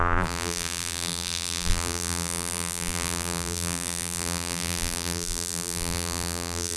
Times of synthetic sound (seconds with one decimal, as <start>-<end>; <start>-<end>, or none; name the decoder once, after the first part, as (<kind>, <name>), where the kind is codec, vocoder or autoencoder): 0.0-6.8 (vocoder, BigVGAN v2)